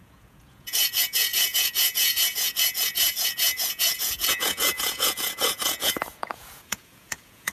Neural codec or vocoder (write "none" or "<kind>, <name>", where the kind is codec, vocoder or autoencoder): vocoder, Vocos